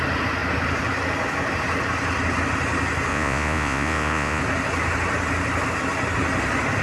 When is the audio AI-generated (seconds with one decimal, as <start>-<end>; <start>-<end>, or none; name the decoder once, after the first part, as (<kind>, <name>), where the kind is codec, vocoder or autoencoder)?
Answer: 3.1-4.4 (vocoder, Vocos)